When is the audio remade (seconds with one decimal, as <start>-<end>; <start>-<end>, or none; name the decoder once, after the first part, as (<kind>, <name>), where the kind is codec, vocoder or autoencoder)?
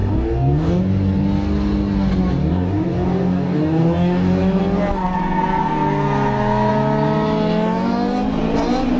0.0-0.8 (codec, DAC); 2.4-4.6